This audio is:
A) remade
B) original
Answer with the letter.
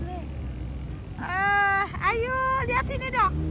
B